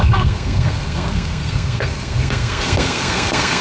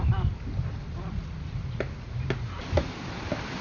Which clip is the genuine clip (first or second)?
second